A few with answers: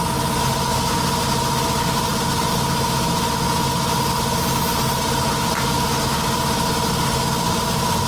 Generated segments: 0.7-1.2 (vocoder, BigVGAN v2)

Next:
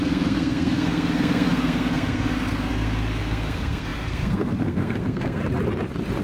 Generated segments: 0.0-5.4 (codec, SNAC)

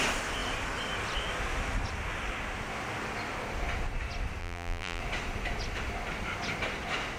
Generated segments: 4.4-5.0 (vocoder, BigVGAN v2)

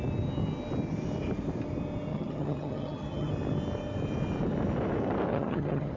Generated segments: 2.1-3.3 (vocoder, HiFi-GAN); 5.3-6.0

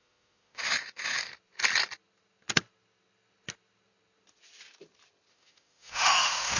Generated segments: 0.0-1.3 (autoencoder, DAC-VAE); 5.3-6.6

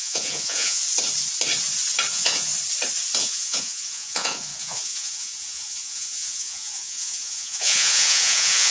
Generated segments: 0.0-0.8 (vocoder, Vocos); 2.1-2.5; 3.2-8.7

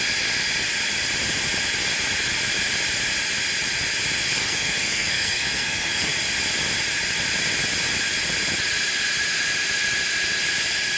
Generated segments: 4.3-6.1 (codec, SNAC)